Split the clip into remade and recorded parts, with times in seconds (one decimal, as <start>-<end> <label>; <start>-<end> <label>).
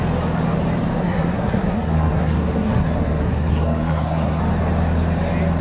0.0-1.0 recorded; 1.0-4.4 remade; 4.4-5.6 recorded